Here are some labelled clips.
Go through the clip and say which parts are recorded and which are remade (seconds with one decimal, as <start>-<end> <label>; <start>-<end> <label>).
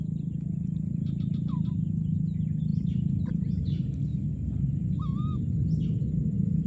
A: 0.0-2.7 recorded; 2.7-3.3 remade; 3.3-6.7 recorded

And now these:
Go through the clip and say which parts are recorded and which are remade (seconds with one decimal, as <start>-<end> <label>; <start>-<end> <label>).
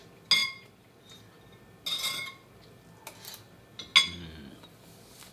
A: 0.0-0.4 recorded; 0.4-1.1 remade; 1.1-5.3 recorded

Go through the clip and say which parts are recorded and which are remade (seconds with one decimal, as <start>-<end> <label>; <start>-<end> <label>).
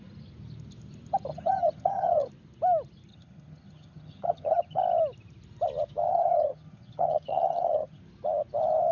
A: 0.0-1.3 recorded; 1.3-2.3 remade; 2.3-3.1 recorded; 3.1-4.8 remade; 4.8-6.1 recorded; 6.1-8.0 remade; 8.0-8.9 recorded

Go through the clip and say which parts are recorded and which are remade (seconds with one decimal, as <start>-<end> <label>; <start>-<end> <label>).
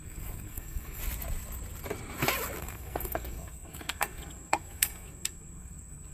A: 0.0-1.0 remade; 1.0-2.6 recorded; 2.6-6.1 remade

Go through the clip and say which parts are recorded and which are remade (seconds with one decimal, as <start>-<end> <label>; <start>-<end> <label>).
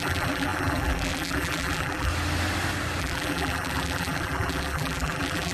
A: 0.0-2.1 remade; 2.1-3.0 recorded; 3.0-5.5 remade